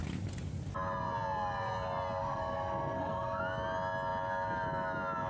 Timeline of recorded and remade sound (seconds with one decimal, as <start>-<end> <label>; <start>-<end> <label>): 0.0-2.2 recorded; 2.2-3.4 remade; 3.4-5.3 recorded